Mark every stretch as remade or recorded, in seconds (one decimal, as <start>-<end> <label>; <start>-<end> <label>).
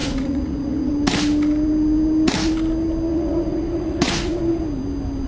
0.0-0.9 remade; 0.9-3.1 recorded; 3.1-4.4 remade; 4.4-5.3 recorded